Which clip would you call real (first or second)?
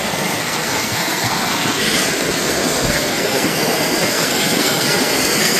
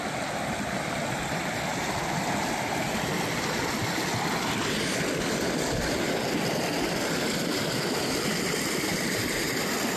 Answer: second